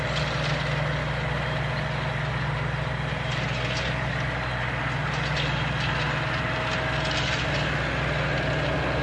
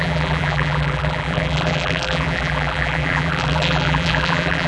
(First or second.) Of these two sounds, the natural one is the first